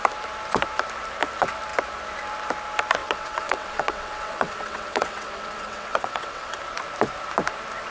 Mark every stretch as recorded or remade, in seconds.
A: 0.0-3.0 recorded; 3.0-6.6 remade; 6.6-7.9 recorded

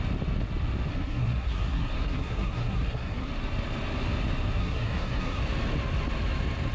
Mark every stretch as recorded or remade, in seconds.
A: 0.0-0.9 recorded; 0.9-3.3 remade; 3.3-4.6 recorded; 4.6-5.4 remade; 5.4-6.7 recorded

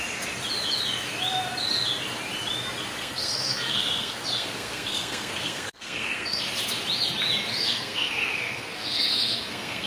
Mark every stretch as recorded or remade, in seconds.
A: 0.0-3.0 recorded; 3.0-6.4 remade; 6.4-7.5 recorded; 7.5-9.9 remade

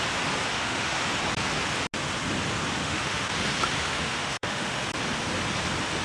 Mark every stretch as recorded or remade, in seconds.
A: 0.0-0.5 recorded; 0.5-1.0 remade; 1.0-2.8 recorded; 2.8-3.3 remade; 3.3-3.8 recorded; 3.8-4.8 remade; 4.8-6.0 recorded

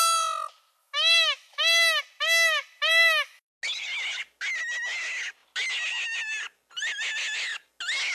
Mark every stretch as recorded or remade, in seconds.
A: 0.0-0.8 recorded; 0.8-2.0 remade; 2.0-2.9 recorded; 2.9-3.5 remade; 3.5-8.1 recorded

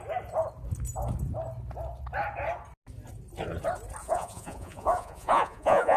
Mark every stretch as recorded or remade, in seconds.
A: 0.0-4.0 recorded; 4.0-6.0 remade

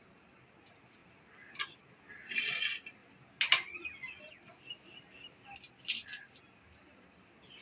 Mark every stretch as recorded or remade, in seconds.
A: 0.0-7.6 recorded